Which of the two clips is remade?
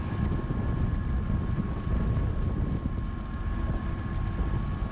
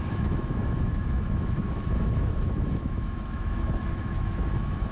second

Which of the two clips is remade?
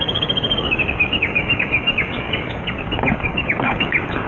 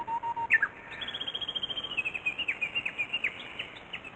first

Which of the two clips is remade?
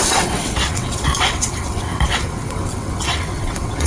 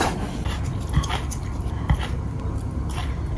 first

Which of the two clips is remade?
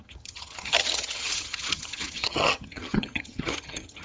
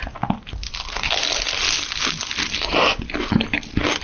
first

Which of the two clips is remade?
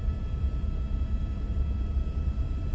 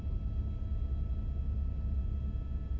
first